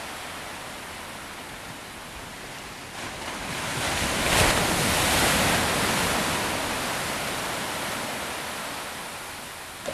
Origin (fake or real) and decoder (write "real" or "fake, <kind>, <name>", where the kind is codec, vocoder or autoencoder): real